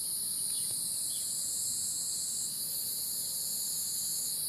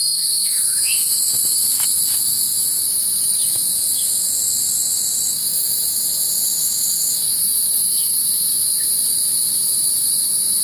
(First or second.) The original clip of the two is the first